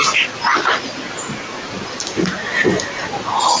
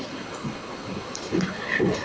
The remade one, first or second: second